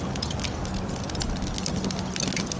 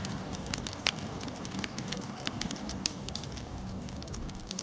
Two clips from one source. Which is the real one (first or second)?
first